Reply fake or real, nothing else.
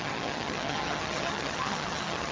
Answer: fake